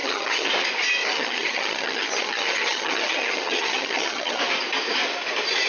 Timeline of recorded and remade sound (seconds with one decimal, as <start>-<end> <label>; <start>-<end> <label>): 0.0-0.5 remade; 0.5-1.0 recorded; 1.0-4.4 remade; 4.4-5.7 recorded